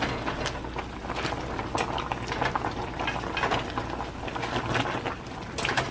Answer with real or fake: real